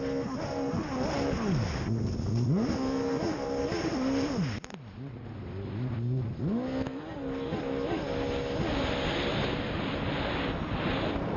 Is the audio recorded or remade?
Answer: recorded